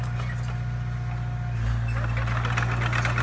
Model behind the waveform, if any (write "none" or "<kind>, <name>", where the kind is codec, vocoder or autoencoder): none